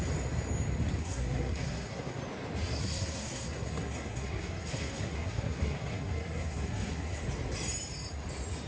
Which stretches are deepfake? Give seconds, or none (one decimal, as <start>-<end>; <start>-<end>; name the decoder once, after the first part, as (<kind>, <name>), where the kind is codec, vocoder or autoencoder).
1.0-2.2 (codec, SNAC); 2.8-7.2